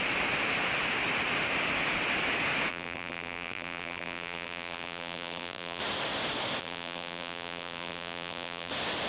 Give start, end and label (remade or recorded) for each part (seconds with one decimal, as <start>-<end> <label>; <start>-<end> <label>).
0.0-2.7 recorded; 2.7-5.8 remade; 5.8-6.6 recorded; 6.6-8.7 remade; 8.7-9.1 recorded